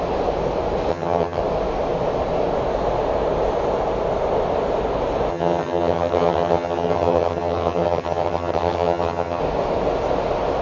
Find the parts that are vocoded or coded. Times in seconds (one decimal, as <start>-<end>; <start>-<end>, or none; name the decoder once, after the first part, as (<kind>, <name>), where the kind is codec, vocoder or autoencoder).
0.9-1.4 (vocoder, HiFi-GAN); 5.3-9.4